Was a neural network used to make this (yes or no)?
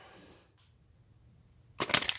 no